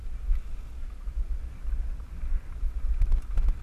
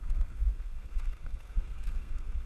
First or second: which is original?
first